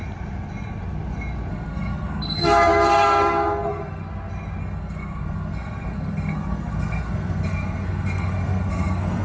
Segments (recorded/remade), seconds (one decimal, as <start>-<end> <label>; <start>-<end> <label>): 0.0-1.5 recorded; 1.5-4.0 remade; 4.0-4.6 recorded; 4.6-9.2 remade